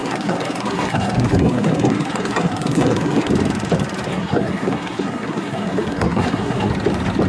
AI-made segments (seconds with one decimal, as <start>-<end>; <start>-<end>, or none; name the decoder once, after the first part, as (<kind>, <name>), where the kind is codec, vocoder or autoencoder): 0.0-3.3 (codec, SNAC); 4.1-6.7